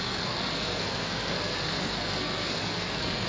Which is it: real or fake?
fake